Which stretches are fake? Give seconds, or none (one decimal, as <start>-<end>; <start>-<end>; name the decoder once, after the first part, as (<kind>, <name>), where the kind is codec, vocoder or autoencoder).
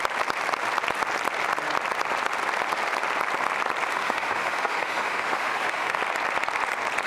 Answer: 3.9-6.0 (autoencoder, DAC-VAE)